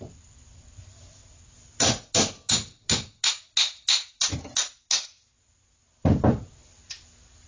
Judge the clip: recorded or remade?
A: recorded